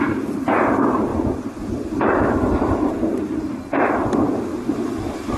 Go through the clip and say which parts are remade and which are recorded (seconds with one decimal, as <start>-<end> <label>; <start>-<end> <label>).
0.0-1.1 remade; 1.1-1.9 recorded; 1.9-5.4 remade